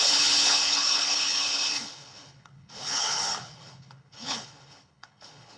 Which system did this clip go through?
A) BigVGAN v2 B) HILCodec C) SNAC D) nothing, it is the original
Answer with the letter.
B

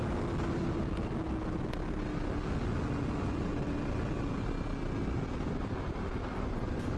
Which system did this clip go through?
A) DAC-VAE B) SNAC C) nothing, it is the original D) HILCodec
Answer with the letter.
C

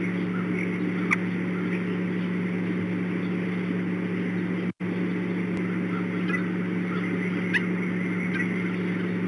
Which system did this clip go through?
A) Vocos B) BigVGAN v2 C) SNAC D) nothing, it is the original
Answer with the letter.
D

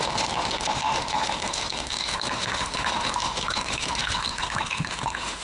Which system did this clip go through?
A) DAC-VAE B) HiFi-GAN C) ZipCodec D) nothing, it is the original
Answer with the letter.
A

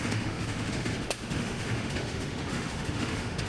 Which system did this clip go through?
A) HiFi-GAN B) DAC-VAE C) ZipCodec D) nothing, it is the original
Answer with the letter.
B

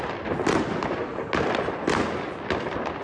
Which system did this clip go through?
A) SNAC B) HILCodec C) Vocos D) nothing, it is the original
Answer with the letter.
D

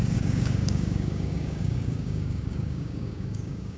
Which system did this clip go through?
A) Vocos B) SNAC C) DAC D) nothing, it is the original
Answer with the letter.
C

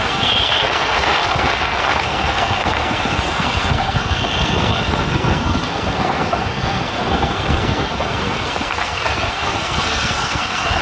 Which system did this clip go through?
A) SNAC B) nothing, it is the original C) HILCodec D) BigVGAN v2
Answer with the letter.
A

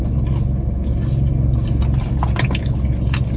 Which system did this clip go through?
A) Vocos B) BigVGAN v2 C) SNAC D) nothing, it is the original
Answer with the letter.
D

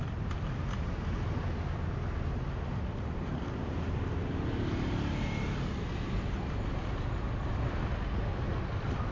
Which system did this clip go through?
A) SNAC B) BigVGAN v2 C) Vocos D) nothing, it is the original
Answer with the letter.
D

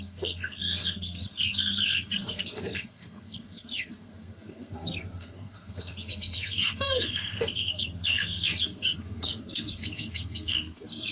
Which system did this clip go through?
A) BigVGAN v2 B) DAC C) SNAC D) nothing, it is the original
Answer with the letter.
C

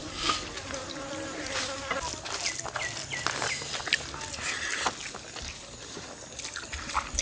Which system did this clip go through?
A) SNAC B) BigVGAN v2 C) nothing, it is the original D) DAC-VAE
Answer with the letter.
C